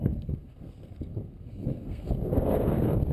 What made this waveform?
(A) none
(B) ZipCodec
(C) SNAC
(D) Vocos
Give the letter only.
C